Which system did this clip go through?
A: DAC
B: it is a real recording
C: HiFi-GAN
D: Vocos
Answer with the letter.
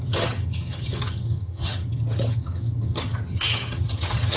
C